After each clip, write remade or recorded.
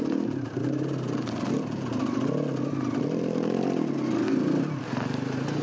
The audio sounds recorded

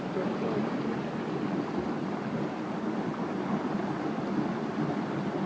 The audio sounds recorded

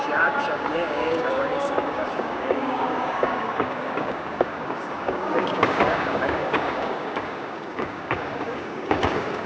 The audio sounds remade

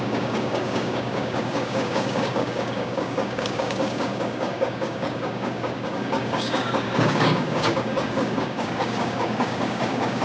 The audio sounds remade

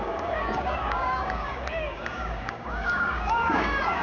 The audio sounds remade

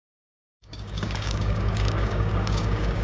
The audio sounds remade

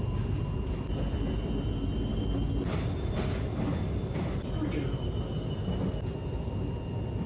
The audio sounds recorded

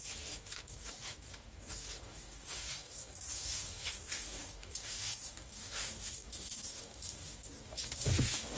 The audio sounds remade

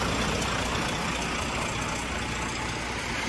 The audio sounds recorded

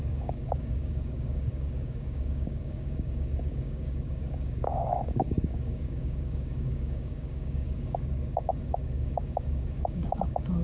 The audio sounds remade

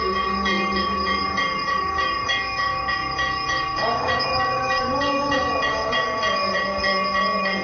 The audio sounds remade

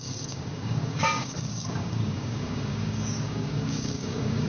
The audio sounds remade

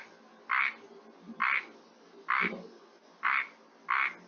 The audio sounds recorded